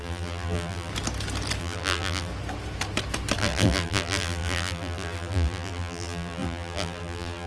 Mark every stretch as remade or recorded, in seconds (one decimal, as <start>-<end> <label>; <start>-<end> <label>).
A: 0.0-0.9 remade; 0.9-1.6 recorded; 1.6-2.3 remade; 2.3-3.4 recorded; 3.4-7.5 remade